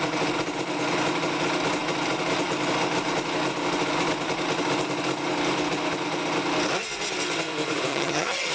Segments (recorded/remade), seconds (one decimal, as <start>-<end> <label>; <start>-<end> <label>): 0.0-7.9 recorded; 7.9-8.5 remade